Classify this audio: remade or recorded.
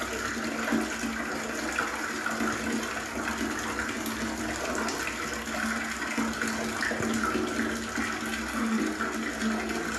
recorded